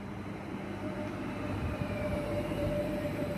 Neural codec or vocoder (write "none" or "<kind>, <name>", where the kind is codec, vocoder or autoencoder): vocoder, BigVGAN v2